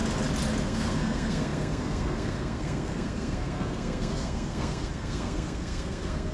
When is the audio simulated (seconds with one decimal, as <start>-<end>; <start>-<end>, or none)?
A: 0.6-6.3